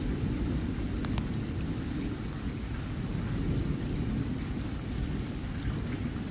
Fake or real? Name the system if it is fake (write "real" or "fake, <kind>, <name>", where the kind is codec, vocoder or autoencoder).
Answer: real